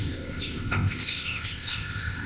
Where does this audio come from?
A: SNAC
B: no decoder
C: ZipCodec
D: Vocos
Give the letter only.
C